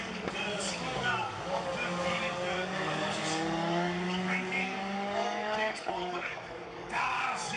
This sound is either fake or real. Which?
fake